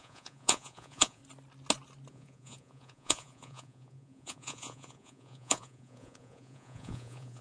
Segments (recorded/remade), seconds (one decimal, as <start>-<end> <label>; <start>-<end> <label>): 0.0-1.2 remade; 1.2-2.1 recorded; 2.1-7.4 remade